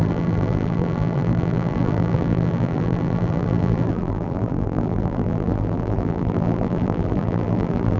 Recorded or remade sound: remade